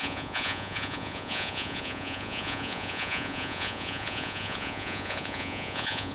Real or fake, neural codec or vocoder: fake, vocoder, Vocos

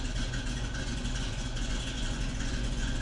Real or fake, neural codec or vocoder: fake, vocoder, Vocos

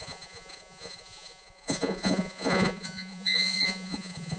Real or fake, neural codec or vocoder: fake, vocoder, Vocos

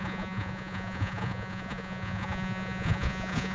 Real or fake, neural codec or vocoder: fake, vocoder, Vocos